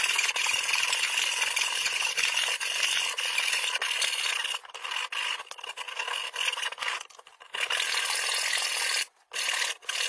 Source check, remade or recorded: recorded